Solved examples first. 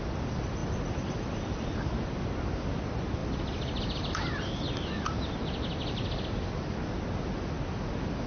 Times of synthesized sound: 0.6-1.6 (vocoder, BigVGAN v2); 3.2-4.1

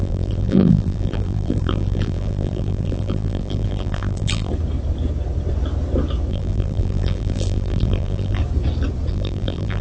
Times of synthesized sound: 0.0-4.5 (vocoder, BigVGAN v2); 6.3-8.4; 9.1-9.8